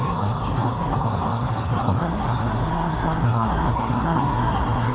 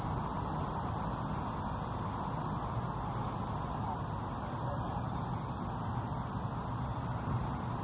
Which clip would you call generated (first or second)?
first